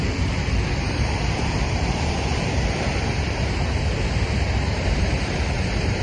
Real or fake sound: fake